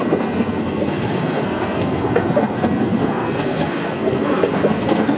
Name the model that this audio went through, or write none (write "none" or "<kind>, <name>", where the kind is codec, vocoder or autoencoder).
codec, SNAC